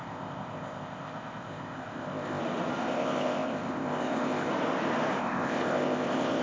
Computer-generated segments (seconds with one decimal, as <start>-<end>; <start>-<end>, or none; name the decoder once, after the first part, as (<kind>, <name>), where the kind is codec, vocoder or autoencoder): 0.0-2.4 (codec, ZipCodec); 2.8-4.5; 5.2-6.4